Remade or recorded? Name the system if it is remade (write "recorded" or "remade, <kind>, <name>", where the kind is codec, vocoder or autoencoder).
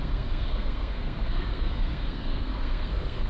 remade, codec, SNAC